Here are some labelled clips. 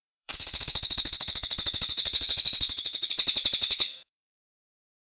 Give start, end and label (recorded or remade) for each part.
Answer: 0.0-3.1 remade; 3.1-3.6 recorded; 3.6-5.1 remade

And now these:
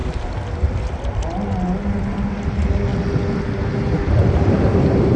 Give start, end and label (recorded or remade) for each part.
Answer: 0.0-5.2 recorded

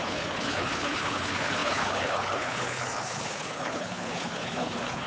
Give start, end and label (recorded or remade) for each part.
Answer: 0.0-5.1 remade

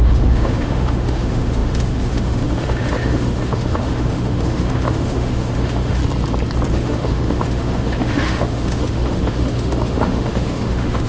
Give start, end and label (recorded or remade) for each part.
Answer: 0.0-6.0 remade; 6.0-6.7 recorded; 6.7-11.1 remade

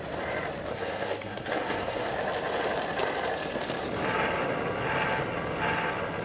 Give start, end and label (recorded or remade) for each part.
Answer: 0.0-0.7 recorded; 0.7-2.1 remade; 2.1-6.2 recorded